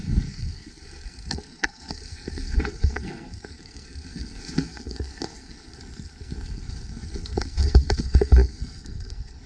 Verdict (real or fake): fake